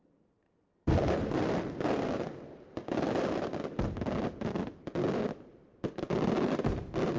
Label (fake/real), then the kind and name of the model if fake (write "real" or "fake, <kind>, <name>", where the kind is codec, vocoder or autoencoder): real